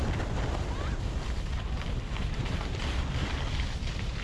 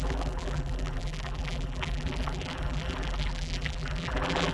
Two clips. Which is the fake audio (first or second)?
second